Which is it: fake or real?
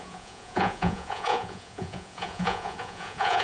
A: fake